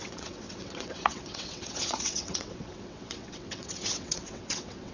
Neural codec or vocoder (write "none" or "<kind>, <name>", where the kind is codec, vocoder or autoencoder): vocoder, WaveNeXt